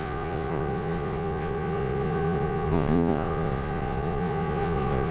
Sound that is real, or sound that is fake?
fake